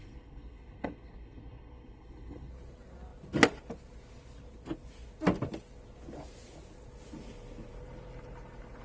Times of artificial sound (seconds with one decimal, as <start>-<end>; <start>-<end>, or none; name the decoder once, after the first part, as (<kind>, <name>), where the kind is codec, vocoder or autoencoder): 0.0-2.5 (codec, SNAC)